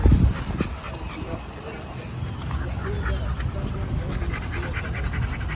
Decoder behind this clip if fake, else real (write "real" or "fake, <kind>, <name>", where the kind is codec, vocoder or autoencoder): real